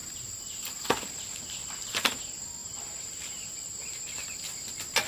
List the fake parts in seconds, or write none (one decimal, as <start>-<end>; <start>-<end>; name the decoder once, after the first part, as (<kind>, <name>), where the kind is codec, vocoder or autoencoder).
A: 0.0-2.2 (vocoder, BigVGAN v2); 2.6-3.5